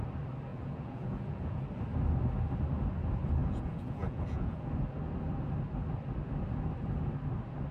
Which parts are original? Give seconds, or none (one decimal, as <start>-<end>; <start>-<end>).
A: 0.0-0.5; 1.6-3.4; 4.7-7.7